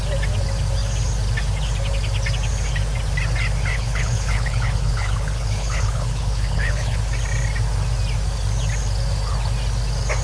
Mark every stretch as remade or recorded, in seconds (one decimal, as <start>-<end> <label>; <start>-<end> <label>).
0.0-3.7 recorded; 3.7-7.0 remade; 7.0-10.2 recorded